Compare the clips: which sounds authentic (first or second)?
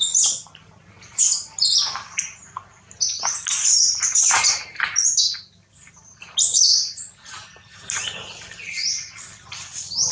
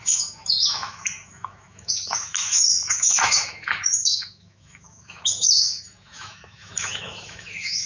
first